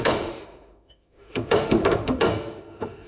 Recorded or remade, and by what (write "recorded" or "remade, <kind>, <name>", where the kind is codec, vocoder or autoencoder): remade, autoencoder, DAC-VAE